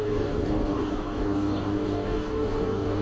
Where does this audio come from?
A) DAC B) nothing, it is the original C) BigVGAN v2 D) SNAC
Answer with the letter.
A